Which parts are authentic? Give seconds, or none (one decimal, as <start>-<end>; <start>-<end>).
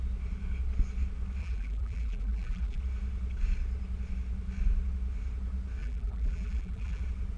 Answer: 0.0-1.4; 2.8-5.8; 7.0-7.4